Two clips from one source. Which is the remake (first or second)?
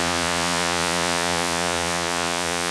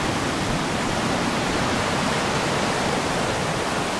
first